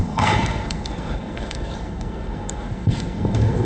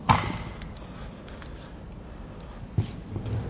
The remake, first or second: first